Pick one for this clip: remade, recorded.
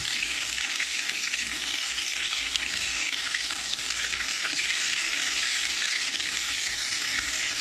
remade